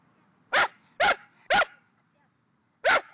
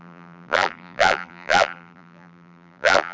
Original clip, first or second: first